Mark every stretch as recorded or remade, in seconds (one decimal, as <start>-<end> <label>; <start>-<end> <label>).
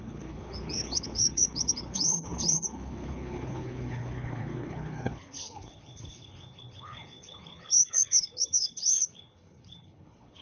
0.0-10.4 remade